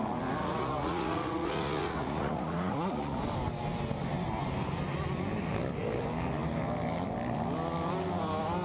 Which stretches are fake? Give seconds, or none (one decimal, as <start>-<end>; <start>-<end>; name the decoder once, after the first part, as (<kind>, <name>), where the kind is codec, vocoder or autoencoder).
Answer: 0.4-3.2 (vocoder, Vocos)